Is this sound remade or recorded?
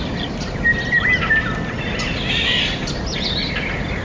recorded